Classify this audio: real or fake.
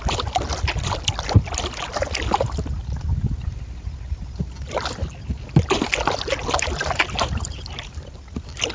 real